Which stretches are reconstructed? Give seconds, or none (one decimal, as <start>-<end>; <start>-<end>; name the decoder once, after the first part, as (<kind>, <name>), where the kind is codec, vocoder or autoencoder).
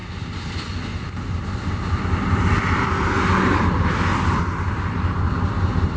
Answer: none